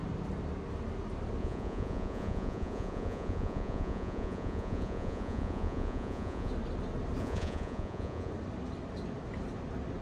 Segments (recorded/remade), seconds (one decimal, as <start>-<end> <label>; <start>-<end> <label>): 0.0-1.4 recorded; 1.4-6.5 remade; 6.5-7.2 recorded; 7.2-8.3 remade; 8.3-10.0 recorded